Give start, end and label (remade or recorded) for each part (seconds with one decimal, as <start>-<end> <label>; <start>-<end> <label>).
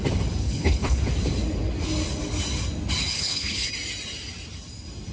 0.0-0.4 recorded; 0.4-1.0 remade; 1.0-3.1 recorded; 3.1-3.7 remade; 3.7-5.1 recorded